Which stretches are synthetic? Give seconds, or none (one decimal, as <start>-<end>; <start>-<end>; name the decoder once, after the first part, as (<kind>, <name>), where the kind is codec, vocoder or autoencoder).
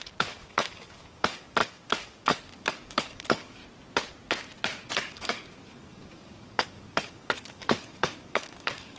0.0-3.6 (codec, DAC); 5.1-9.0